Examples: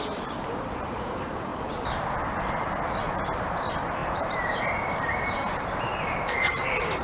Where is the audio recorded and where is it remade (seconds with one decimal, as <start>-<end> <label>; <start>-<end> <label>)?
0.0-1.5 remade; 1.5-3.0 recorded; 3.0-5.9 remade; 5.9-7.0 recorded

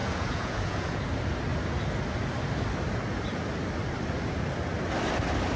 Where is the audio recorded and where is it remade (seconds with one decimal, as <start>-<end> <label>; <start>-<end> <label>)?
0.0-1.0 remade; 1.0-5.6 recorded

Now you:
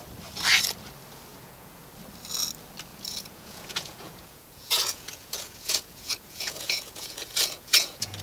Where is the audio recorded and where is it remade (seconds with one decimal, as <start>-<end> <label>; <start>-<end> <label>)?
0.0-1.3 recorded; 1.3-1.9 remade; 1.9-2.9 recorded; 2.9-8.2 remade